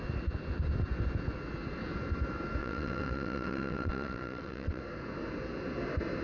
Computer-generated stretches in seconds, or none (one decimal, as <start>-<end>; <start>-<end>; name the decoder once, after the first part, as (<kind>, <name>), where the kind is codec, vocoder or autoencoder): 2.6-4.8 (vocoder, WaveNeXt)